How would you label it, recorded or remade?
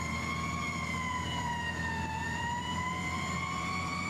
remade